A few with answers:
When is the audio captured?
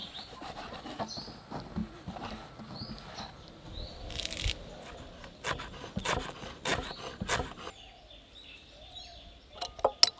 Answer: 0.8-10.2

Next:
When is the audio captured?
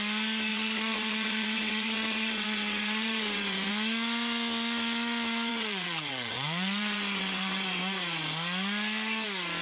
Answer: 0.0-0.5; 3.7-5.5; 7.8-9.6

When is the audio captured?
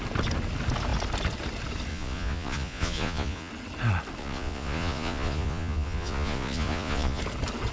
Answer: 0.0-1.9; 3.5-4.2; 7.2-7.7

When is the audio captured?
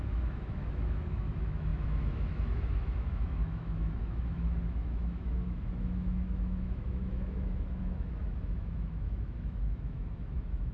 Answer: none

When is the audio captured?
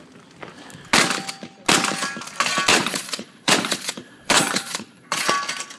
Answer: 0.0-2.7; 5.3-5.8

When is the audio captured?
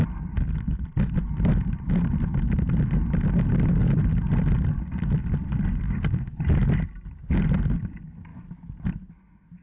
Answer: 0.0-9.6